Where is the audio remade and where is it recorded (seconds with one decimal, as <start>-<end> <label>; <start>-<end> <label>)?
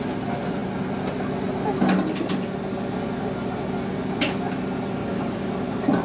0.0-5.0 recorded; 5.0-5.5 remade; 5.5-6.0 recorded